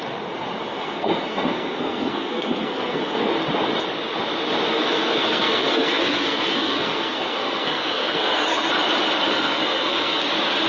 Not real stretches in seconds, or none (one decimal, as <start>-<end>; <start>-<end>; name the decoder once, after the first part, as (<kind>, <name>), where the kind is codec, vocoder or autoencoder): 0.7-3.3 (codec, SNAC); 4.7-8.7; 9.3-10.2